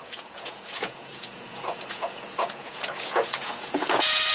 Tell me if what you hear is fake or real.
fake